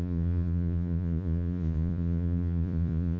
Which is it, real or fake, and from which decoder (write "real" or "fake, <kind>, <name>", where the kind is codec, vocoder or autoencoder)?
fake, vocoder, Vocos